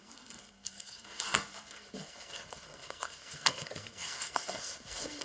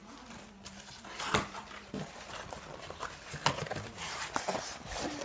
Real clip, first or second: second